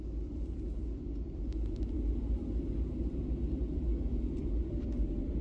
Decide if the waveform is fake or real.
real